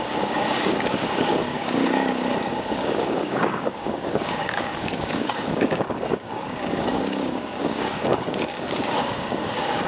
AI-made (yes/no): yes